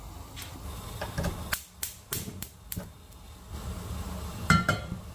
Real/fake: real